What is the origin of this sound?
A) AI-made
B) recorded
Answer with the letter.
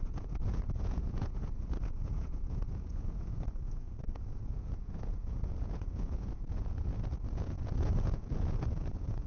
A